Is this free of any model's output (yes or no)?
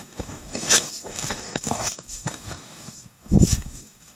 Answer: no